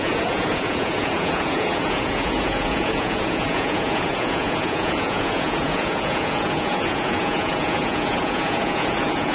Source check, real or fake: fake